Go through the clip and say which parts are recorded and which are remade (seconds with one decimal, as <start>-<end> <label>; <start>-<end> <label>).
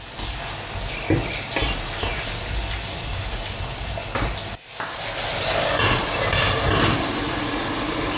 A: 0.0-8.2 recorded